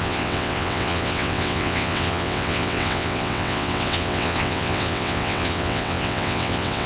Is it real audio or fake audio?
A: fake